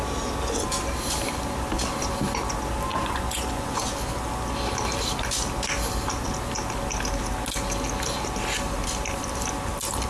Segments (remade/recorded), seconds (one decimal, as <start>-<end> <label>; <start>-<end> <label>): 0.0-2.9 recorded; 2.9-3.9 remade; 3.9-10.1 recorded